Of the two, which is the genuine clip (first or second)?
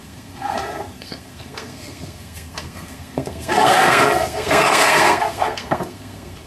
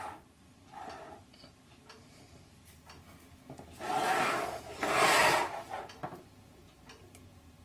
second